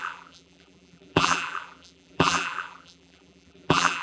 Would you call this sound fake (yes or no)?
yes